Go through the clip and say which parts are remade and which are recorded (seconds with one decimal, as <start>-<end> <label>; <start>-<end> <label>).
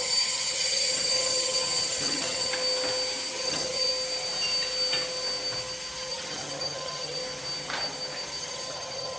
0.0-2.5 remade; 2.5-3.3 recorded; 3.3-3.9 remade; 3.9-6.1 recorded; 6.1-7.2 remade; 7.2-8.4 recorded; 8.4-9.2 remade